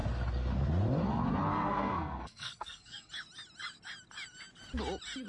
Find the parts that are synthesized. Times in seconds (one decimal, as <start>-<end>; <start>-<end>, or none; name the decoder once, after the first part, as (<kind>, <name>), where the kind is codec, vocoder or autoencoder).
1.5-3.1 (codec, SNAC)